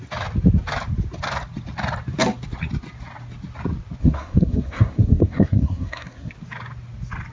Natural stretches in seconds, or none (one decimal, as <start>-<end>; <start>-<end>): 0.0-4.0; 6.3-7.3